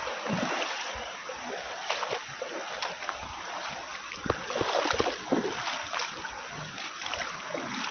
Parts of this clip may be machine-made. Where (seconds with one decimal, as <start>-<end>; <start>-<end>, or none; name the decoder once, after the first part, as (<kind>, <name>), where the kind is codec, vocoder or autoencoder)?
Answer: none